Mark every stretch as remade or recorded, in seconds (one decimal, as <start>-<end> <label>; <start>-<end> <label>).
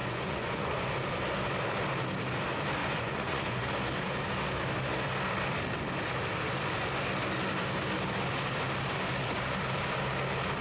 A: 0.0-0.9 remade; 0.9-2.8 recorded; 2.8-3.7 remade; 3.7-10.6 recorded